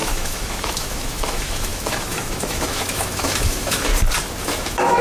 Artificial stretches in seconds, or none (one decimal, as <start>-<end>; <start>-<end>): 0.0-3.9; 4.4-5.0